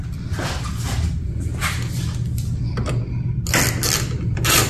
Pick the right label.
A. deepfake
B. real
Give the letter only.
B